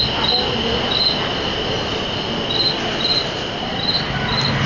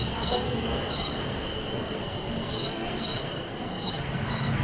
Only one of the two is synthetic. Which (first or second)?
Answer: second